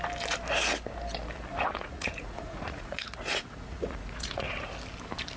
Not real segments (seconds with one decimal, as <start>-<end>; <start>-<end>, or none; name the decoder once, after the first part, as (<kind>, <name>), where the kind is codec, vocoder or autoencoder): 1.5-4.7 (vocoder, Vocos)